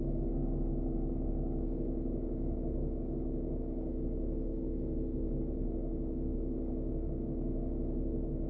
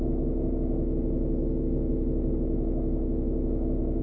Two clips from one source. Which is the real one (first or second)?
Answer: second